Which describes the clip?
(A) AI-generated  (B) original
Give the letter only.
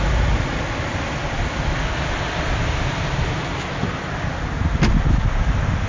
B